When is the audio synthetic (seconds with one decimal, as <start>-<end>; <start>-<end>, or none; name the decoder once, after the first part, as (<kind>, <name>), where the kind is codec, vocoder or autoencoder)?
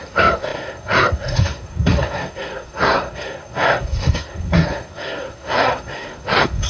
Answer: 0.0-6.7 (codec, SNAC)